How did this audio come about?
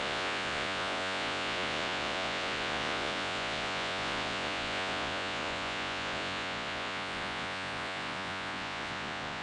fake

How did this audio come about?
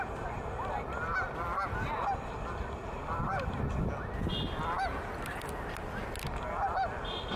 real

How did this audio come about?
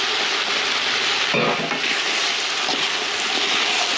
real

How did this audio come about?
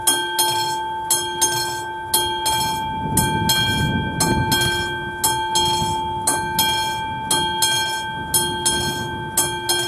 real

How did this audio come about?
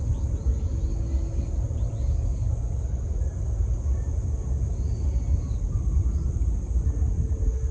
real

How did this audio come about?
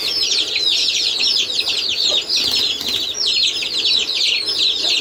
real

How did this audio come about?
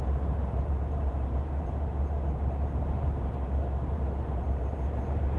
fake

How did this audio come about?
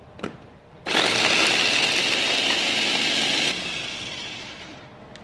real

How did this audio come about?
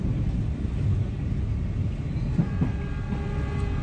real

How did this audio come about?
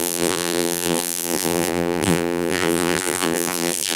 fake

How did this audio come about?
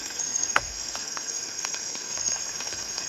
fake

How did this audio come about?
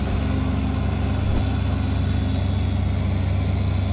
real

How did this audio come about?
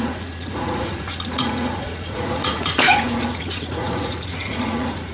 fake